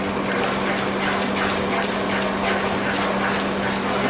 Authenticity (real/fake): real